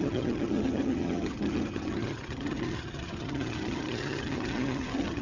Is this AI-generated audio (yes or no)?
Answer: yes